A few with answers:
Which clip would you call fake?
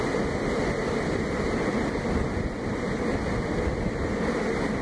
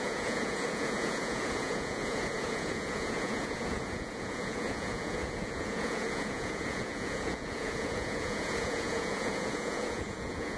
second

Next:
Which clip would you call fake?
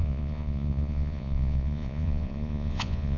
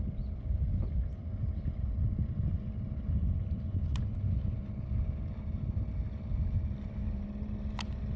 first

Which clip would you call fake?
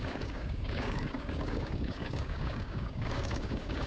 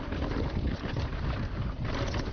first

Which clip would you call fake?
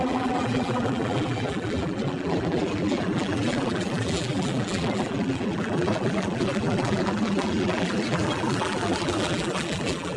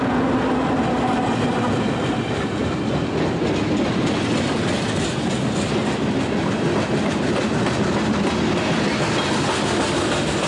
first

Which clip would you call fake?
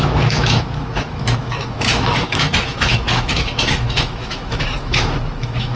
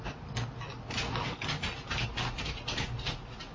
first